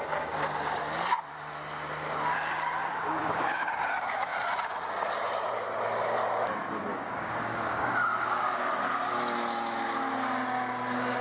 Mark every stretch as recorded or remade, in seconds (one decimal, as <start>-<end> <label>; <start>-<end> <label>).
0.0-2.9 recorded; 2.9-3.7 remade; 3.7-6.9 recorded; 6.9-8.7 remade; 8.7-11.2 recorded